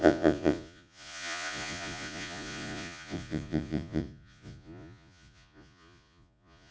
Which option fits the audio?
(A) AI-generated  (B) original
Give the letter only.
A